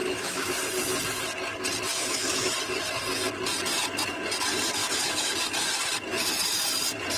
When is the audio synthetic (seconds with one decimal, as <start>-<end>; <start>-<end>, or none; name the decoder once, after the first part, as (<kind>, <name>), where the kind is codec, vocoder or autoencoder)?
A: 0.0-0.5 (autoencoder, DAC-VAE); 1.9-2.5; 4.8-5.4